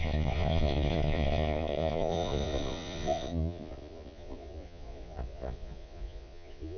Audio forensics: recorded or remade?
remade